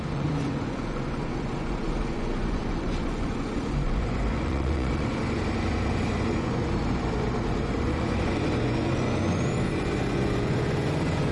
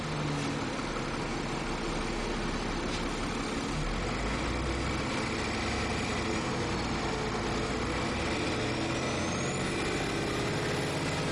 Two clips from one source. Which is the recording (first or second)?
second